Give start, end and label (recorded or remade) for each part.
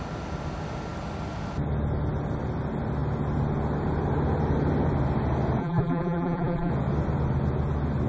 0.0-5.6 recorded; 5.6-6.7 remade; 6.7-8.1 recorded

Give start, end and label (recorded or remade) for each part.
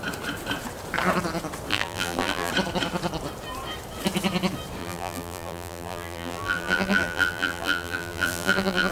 0.0-1.7 recorded; 1.7-2.5 remade; 2.5-4.8 recorded; 4.8-8.9 remade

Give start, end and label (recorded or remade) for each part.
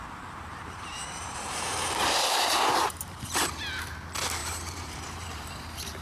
0.0-3.6 remade; 3.6-4.4 recorded; 4.4-5.4 remade; 5.4-6.0 recorded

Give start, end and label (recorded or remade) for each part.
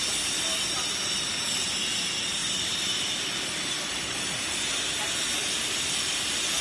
0.0-2.4 recorded; 2.4-4.2 remade; 4.2-6.6 recorded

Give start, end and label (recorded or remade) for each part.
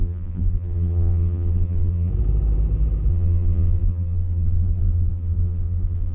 0.0-2.1 remade; 2.1-3.1 recorded; 3.1-6.1 remade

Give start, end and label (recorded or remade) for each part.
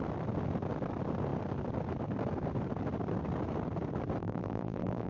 0.0-4.2 recorded; 4.2-5.1 remade